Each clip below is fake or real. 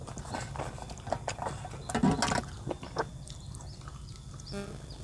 real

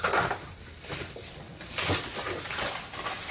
real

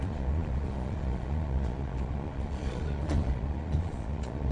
fake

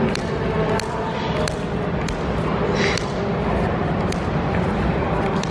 real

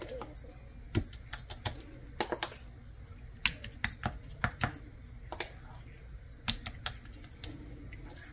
real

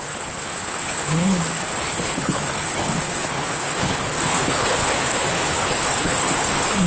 fake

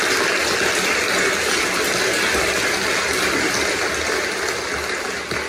real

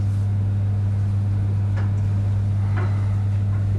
real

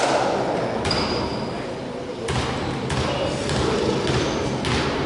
real